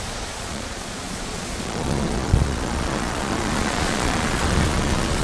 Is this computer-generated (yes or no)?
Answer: yes